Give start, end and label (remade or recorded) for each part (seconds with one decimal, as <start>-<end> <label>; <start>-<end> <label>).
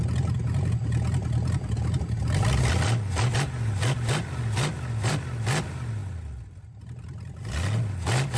0.0-8.4 recorded